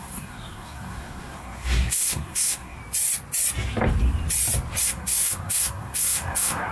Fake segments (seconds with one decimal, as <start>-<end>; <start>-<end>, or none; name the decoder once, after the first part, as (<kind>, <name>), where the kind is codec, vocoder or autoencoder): 0.0-2.8 (codec, SNAC); 4.8-6.7